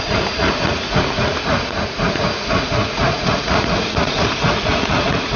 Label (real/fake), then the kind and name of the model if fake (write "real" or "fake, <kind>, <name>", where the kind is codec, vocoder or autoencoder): fake, vocoder, Vocos